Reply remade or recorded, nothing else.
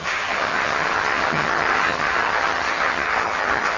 remade